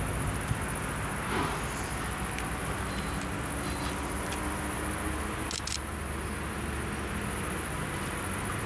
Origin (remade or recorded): recorded